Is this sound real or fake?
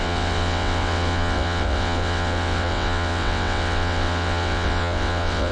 fake